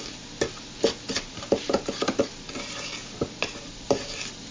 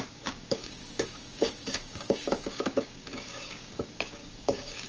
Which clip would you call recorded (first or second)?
first